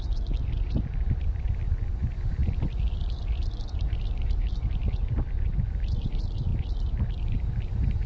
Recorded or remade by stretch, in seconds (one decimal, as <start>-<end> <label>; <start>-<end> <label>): 0.0-8.1 recorded